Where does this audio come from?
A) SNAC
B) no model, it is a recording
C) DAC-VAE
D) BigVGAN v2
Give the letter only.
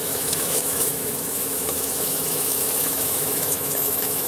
C